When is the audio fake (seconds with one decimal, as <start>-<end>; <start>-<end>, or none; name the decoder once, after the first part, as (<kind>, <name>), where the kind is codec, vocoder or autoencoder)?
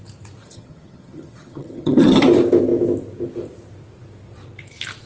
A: 0.4-2.2 (vocoder, HiFi-GAN)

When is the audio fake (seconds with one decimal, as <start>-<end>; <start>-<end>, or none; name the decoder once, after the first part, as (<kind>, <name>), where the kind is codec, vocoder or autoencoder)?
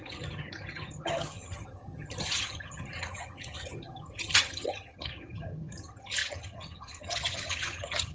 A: 0.0-8.1 (vocoder, HiFi-GAN)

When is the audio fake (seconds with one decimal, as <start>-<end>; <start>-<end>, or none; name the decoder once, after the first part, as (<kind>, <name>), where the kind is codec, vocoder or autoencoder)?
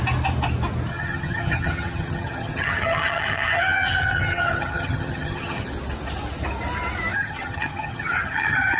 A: 0.9-5.7 (vocoder, HiFi-GAN); 7.1-8.8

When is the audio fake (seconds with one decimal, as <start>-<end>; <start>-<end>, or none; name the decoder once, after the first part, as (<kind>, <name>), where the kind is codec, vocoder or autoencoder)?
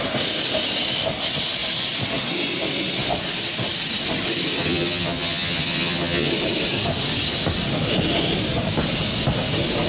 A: 4.6-6.3 (vocoder, HiFi-GAN)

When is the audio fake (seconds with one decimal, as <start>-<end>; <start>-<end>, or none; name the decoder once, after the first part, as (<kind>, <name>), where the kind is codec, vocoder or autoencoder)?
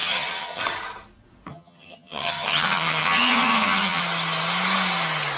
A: 0.0-0.6 (vocoder, HiFi-GAN); 1.5-4.0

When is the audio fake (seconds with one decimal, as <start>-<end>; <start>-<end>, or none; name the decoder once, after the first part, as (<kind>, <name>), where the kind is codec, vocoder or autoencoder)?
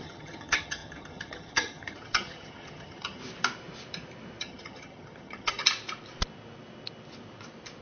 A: 0.0-3.2 (vocoder, HiFi-GAN); 4.4-5.6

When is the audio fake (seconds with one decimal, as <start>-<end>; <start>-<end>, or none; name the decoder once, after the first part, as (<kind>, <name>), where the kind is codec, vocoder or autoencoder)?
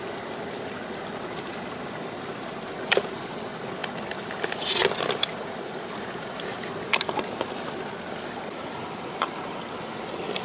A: none